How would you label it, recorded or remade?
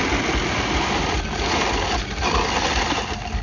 recorded